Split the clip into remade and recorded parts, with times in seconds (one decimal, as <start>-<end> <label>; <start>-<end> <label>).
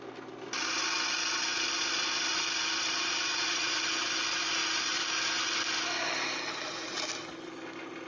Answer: 0.0-3.3 recorded; 3.3-3.8 remade; 3.8-8.1 recorded